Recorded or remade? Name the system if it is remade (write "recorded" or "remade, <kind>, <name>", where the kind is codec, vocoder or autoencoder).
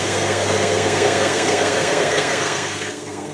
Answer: remade, codec, SNAC